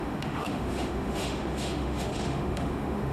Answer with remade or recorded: remade